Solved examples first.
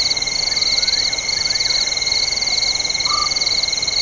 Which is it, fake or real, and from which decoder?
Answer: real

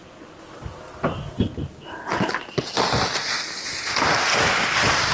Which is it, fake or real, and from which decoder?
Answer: real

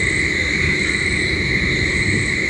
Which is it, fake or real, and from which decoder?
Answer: real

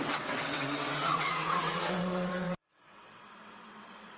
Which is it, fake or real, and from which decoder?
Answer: fake, vocoder, WaveNeXt